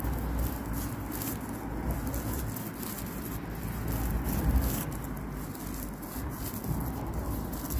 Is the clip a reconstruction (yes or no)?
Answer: no